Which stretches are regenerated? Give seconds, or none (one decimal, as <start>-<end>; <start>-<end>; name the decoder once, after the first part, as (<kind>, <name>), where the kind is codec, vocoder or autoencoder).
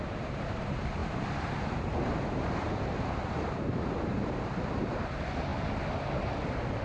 0.0-5.5 (vocoder, BigVGAN v2)